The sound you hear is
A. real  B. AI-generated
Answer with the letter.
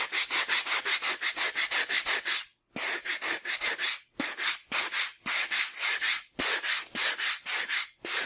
A